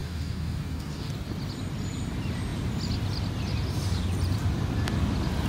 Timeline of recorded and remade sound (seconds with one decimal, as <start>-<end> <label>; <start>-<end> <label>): 0.0-1.1 remade; 1.1-5.5 recorded